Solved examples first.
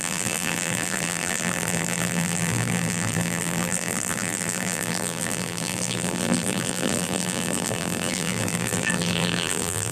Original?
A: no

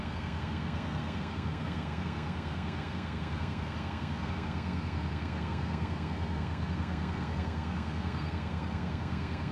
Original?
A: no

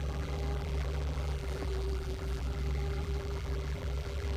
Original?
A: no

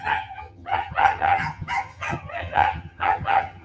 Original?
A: no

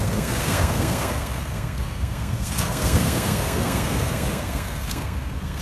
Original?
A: no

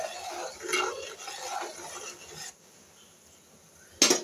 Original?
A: yes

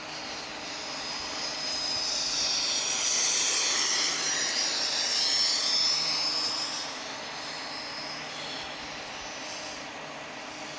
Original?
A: yes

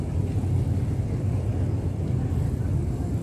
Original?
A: yes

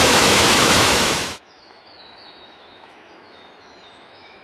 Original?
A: no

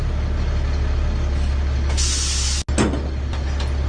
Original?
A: yes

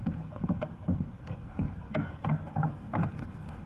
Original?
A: no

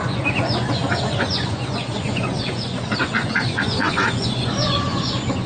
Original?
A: no